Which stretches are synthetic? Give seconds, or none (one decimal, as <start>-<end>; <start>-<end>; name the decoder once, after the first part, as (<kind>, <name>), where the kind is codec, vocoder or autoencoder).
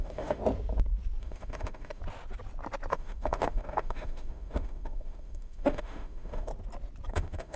0.0-0.4 (autoencoder, DAC-VAE); 1.2-2.0; 2.9-6.5; 7.1-7.6